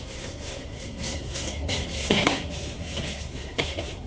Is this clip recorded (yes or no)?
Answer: no